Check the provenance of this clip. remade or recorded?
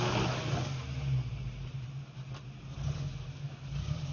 recorded